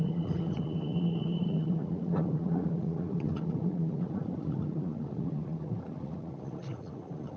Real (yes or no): no